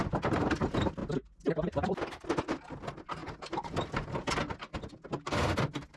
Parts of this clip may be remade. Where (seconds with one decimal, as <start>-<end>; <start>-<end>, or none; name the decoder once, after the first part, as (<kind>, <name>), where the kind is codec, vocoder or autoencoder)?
none